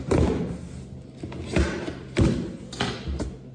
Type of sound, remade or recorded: recorded